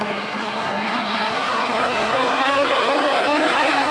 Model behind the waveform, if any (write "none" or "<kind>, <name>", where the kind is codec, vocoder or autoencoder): codec, SNAC